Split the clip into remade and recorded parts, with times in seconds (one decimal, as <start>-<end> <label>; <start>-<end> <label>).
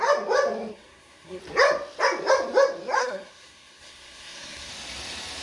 0.0-0.7 recorded; 0.7-1.4 remade; 1.4-3.0 recorded; 3.0-4.7 remade; 4.7-5.4 recorded